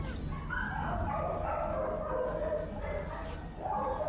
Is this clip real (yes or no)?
yes